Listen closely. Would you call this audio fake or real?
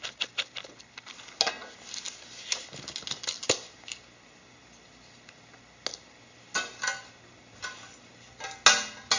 real